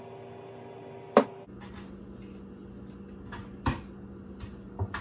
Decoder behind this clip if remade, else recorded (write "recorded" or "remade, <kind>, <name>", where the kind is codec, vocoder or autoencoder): recorded